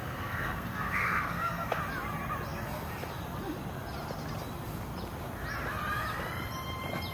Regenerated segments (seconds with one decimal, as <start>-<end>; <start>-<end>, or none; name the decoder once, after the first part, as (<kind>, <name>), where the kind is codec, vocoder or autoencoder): 0.0-1.8 (codec, SNAC)